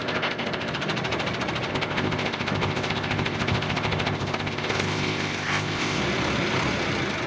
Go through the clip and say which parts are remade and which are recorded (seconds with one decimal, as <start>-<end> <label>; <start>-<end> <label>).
0.0-0.7 remade; 0.7-1.7 recorded; 1.7-6.0 remade; 6.0-7.3 recorded